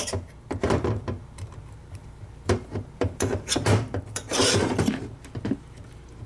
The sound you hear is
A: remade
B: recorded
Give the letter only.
A